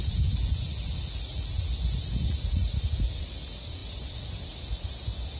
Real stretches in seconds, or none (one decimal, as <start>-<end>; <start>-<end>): 0.0-5.4